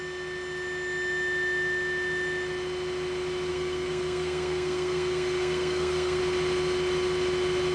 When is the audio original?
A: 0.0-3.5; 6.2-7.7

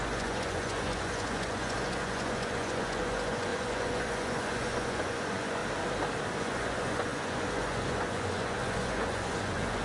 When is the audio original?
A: 5.6-6.4

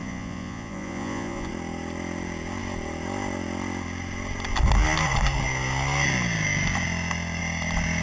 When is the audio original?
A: 1.5-8.0

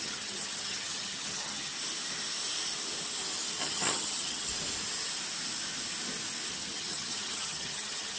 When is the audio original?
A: 1.7-3.6; 4.5-6.5